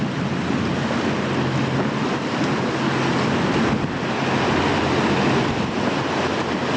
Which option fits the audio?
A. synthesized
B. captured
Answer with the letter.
B